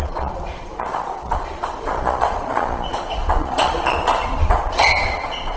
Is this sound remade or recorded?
remade